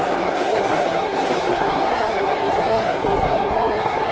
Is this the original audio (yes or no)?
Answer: no